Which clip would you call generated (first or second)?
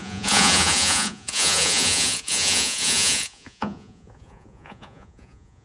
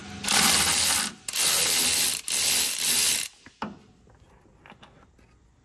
first